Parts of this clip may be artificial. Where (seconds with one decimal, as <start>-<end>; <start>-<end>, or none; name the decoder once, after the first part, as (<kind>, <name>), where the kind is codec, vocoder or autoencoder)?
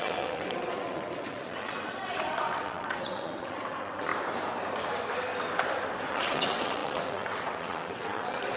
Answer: 0.0-4.1 (vocoder, WaveNeXt); 6.1-8.6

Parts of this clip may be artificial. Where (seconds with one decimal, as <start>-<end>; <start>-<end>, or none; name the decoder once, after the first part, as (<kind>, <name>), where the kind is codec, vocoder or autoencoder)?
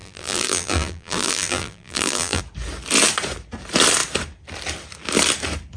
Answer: 0.0-2.4 (vocoder, BigVGAN v2)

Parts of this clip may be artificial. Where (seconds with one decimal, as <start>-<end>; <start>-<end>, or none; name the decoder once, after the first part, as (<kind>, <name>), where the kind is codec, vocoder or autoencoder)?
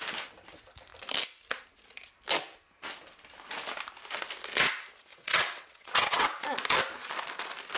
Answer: 5.1-6.4 (vocoder, WaveNeXt)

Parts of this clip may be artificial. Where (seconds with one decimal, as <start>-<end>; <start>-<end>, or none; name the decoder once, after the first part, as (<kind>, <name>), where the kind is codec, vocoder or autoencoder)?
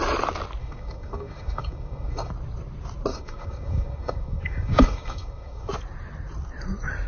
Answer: 0.6-2.3 (codec, DAC); 3.1-5.7